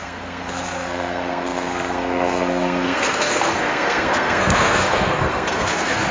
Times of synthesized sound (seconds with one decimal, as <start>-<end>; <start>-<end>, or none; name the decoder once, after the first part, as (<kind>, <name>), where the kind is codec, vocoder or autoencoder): 0.0-6.1 (codec, SNAC)